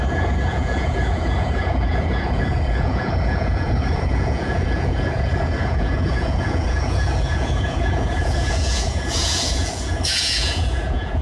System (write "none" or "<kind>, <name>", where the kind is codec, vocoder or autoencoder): vocoder, Vocos